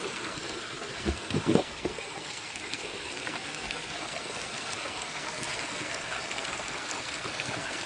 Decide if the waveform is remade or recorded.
remade